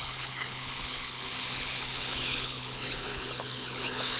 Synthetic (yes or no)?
yes